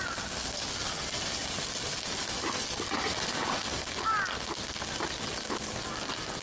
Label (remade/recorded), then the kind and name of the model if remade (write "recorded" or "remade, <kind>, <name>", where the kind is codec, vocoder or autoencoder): recorded